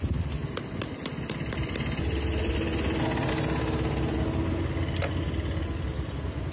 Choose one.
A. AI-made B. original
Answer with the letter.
B